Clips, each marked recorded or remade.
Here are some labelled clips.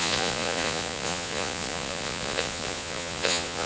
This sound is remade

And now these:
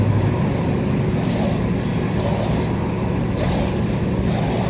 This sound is recorded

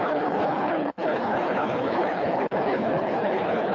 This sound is remade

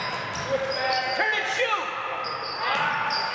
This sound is recorded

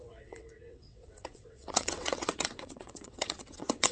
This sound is remade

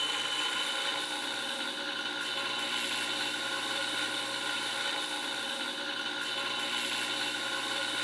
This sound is recorded